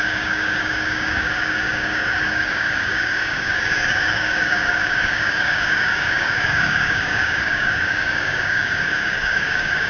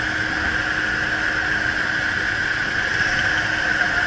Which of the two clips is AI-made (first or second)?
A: first